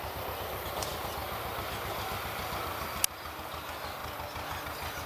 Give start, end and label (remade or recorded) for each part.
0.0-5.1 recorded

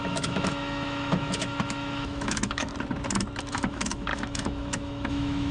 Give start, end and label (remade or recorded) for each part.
0.0-2.7 remade; 2.7-3.4 recorded; 3.4-5.5 remade

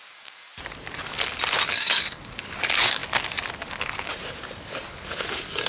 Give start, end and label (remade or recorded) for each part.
0.0-0.5 remade; 0.5-1.7 recorded; 1.7-3.0 remade; 3.0-3.6 recorded; 3.6-4.1 remade; 4.1-4.7 recorded; 4.7-5.7 remade

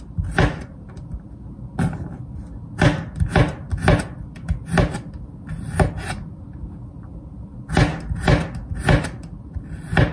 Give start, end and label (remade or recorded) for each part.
0.0-10.1 recorded

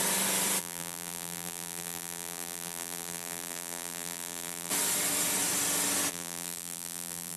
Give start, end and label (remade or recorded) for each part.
0.0-0.6 recorded; 0.6-4.7 remade; 4.7-6.1 recorded; 6.1-7.4 remade

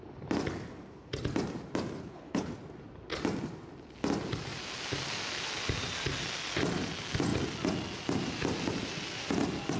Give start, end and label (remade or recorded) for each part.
0.0-2.0 recorded; 2.0-2.5 remade; 2.5-9.8 recorded

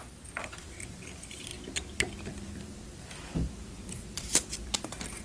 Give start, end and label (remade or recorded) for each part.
0.0-1.5 remade; 1.5-2.3 recorded; 2.3-5.2 remade

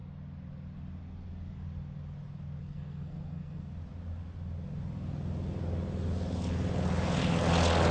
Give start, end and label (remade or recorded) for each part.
0.0-2.6 recorded; 2.6-3.7 remade; 3.7-7.9 recorded